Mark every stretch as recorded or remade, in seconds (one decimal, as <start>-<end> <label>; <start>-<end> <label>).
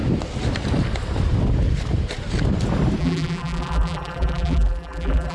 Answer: 0.0-3.0 recorded; 3.0-5.3 remade